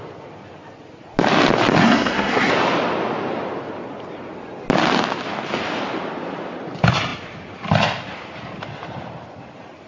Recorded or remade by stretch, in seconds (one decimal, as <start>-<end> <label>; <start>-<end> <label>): 0.0-1.8 recorded; 1.8-2.5 remade; 2.5-9.9 recorded